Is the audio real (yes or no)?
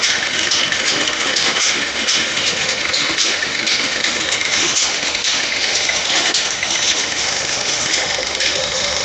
no